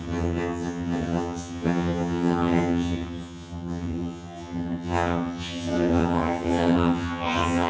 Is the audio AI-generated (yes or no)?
yes